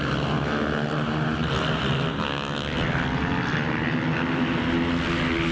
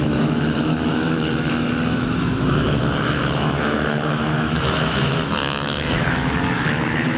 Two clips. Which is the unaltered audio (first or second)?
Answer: first